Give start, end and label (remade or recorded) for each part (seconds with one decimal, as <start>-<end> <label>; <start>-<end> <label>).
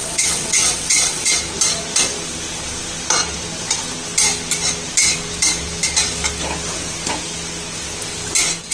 0.0-1.3 remade; 1.3-8.7 recorded